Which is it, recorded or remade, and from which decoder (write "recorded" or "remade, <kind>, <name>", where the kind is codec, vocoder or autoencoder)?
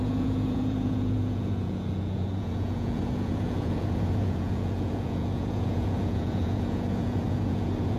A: remade, vocoder, Vocos